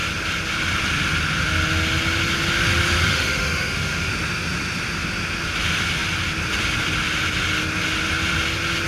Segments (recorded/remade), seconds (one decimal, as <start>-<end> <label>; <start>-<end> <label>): 0.0-3.0 recorded; 3.0-4.1 remade; 4.1-8.9 recorded